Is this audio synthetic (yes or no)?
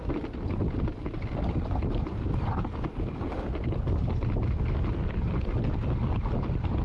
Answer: no